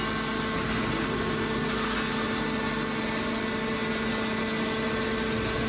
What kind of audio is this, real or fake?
real